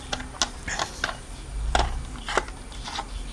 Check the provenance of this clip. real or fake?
real